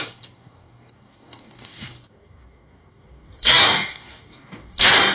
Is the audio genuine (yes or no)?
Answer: no